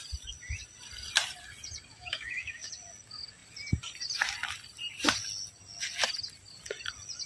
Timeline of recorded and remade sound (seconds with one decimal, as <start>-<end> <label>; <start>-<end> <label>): 0.0-1.9 recorded; 1.9-2.7 remade; 2.7-7.3 recorded